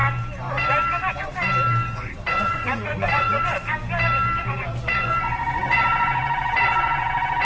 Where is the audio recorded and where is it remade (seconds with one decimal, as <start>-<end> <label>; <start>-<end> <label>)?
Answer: 0.0-2.3 recorded; 2.3-3.5 remade; 3.5-5.0 recorded; 5.0-7.4 remade